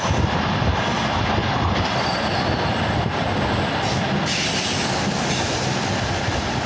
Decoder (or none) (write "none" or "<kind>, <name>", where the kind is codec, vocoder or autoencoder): none